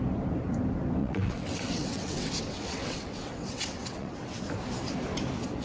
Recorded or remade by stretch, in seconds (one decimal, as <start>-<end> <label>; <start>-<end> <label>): 0.0-1.0 recorded; 1.0-4.4 remade; 4.4-5.6 recorded